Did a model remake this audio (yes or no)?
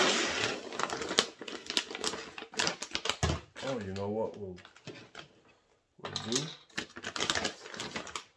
no